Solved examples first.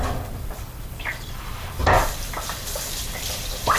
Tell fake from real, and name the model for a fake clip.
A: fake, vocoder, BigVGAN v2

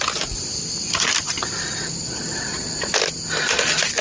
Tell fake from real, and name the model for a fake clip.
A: real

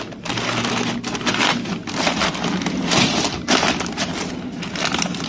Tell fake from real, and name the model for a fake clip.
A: real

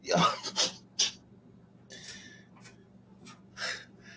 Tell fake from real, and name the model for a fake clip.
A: real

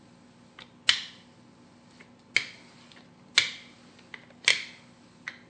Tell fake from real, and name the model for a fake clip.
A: real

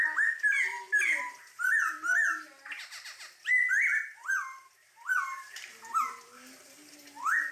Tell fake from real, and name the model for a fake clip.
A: real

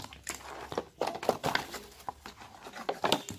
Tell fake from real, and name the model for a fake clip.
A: real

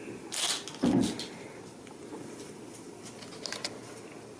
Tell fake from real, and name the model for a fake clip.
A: real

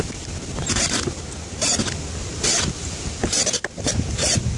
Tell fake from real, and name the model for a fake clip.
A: real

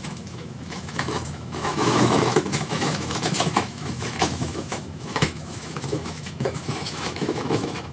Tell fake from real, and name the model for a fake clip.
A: fake, autoencoder, DAC-VAE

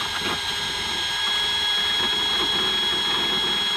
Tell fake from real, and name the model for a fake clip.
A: real